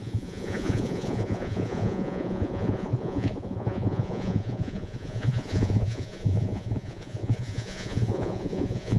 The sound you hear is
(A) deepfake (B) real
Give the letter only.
A